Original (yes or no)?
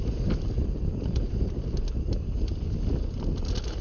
yes